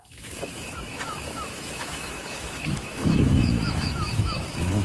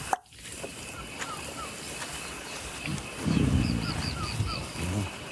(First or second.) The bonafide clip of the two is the second